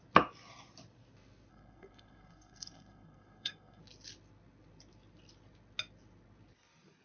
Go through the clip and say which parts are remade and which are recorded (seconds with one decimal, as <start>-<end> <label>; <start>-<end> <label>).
0.0-1.5 recorded; 1.5-3.8 remade; 3.8-7.0 recorded